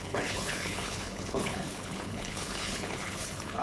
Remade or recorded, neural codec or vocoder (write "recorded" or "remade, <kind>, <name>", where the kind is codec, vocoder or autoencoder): remade, codec, HILCodec